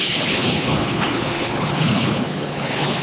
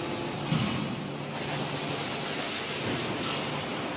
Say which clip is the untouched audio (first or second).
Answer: second